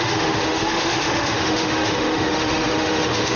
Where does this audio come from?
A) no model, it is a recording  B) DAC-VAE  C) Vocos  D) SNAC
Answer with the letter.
B